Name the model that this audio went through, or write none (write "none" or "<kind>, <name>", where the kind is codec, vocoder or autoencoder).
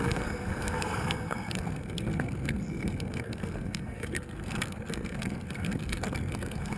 codec, SNAC